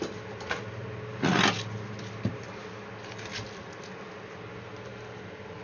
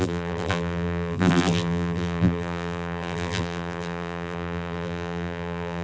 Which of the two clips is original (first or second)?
first